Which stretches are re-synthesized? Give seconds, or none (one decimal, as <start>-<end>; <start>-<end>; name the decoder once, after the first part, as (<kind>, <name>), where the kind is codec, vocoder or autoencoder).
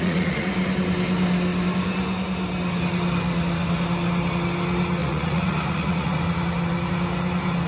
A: 0.0-0.5 (vocoder, Vocos); 5.0-6.2